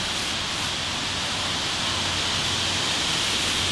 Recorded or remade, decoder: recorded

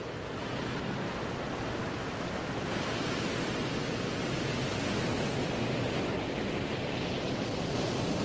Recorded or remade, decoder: recorded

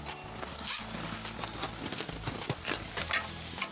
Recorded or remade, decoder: recorded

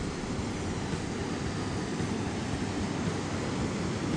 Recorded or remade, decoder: recorded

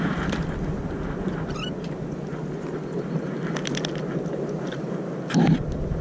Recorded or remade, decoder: recorded